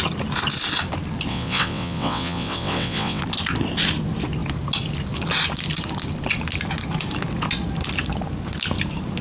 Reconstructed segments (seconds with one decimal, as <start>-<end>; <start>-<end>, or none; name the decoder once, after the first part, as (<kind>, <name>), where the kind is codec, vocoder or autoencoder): 1.3-3.2 (vocoder, WaveNeXt)